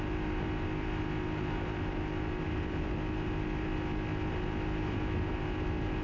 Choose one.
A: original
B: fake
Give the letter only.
A